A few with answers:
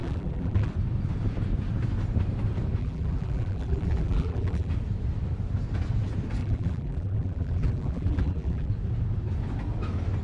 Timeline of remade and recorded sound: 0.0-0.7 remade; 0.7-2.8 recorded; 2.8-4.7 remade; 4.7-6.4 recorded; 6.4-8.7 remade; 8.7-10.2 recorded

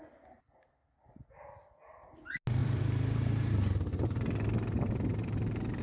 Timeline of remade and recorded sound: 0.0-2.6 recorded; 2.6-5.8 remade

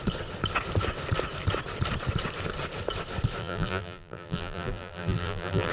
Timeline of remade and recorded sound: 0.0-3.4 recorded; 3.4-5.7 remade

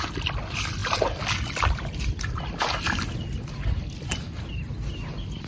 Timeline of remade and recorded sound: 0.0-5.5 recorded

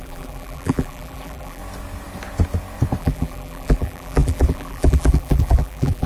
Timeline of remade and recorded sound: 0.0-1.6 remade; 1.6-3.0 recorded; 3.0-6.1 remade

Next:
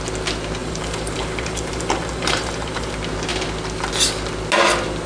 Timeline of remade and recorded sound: 0.0-0.6 recorded; 0.6-2.9 remade; 2.9-5.1 recorded

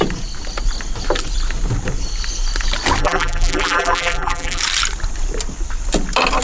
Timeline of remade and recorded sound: 0.0-3.0 recorded; 3.0-4.6 remade; 4.6-6.4 recorded